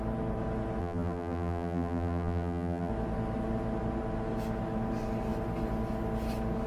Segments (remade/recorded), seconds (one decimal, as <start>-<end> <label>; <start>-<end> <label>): 0.0-0.8 recorded; 0.8-2.9 remade; 2.9-6.7 recorded

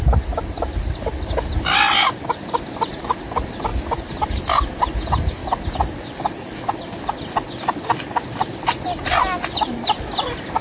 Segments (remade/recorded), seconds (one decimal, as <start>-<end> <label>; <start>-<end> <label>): 0.0-10.6 recorded

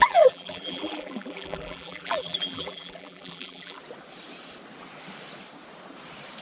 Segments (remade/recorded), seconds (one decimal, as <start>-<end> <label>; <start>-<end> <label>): 0.0-3.8 remade; 3.8-6.4 recorded

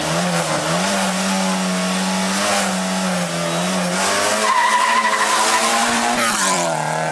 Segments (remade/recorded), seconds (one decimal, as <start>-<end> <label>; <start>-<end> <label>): 0.0-5.6 recorded; 5.6-7.1 remade

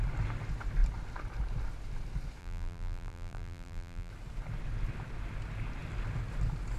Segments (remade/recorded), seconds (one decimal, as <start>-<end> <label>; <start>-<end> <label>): 0.0-2.4 recorded; 2.4-4.1 remade; 4.1-6.8 recorded

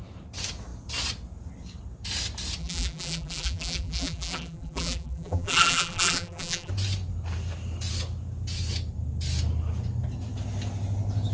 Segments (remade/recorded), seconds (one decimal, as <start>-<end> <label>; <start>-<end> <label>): 0.0-2.6 recorded; 2.6-6.7 remade; 6.7-11.3 recorded

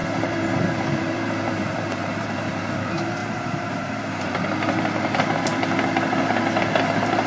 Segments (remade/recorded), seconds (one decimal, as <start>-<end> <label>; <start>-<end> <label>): 0.0-2.7 remade; 2.7-3.2 recorded; 3.2-3.9 remade; 3.9-7.3 recorded

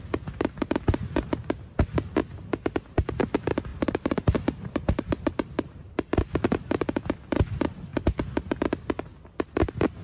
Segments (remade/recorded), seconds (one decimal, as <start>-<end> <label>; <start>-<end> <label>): 0.0-3.7 recorded; 3.7-5.9 remade; 5.9-10.0 recorded